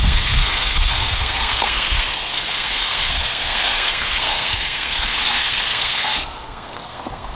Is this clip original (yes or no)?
no